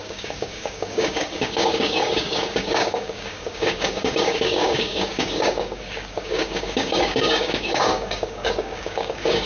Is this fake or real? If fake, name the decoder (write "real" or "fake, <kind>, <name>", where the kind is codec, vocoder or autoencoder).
fake, codec, DAC